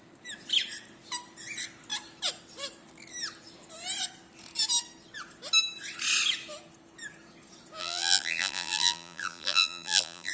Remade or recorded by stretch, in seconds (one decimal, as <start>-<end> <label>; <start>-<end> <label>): 0.0-7.8 recorded; 7.8-10.3 remade